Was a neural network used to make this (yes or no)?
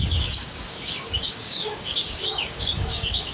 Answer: yes